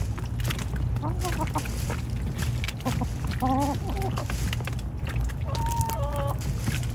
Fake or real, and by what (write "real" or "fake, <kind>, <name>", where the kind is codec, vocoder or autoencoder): real